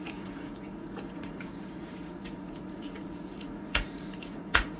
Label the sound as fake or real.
fake